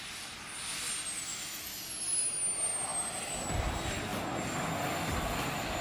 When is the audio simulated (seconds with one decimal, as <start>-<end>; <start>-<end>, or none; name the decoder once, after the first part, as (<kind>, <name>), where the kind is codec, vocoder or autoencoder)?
1.3-1.8 (autoencoder, DAC-VAE)